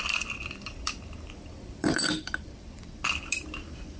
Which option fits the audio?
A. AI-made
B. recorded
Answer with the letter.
A